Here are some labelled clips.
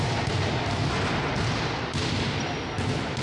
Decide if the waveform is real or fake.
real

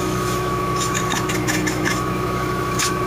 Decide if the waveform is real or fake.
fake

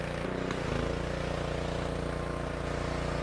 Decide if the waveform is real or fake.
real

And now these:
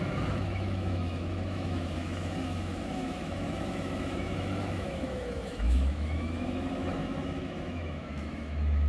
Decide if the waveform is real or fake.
fake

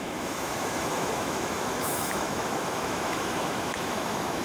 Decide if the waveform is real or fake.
fake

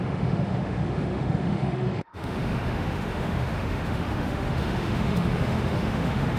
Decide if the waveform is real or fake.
fake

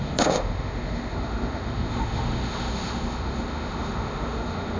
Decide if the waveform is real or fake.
fake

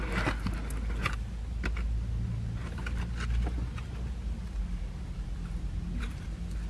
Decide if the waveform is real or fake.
real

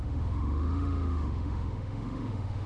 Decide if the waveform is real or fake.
fake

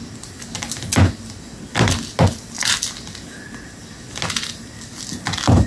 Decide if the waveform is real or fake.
real